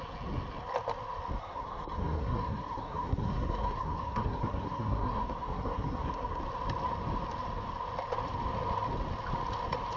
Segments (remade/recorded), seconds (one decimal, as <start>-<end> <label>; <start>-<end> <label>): 0.0-1.4 recorded; 1.4-6.4 remade; 6.4-10.0 recorded